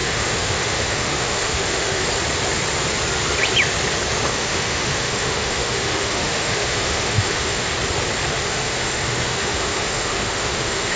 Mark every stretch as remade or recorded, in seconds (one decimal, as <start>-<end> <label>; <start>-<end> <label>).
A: 0.0-2.0 remade; 2.0-4.3 recorded; 4.3-7.7 remade; 7.7-8.4 recorded; 8.4-11.0 remade